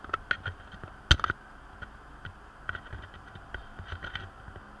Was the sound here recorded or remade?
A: recorded